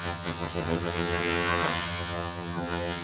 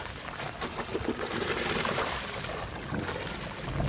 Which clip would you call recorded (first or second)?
second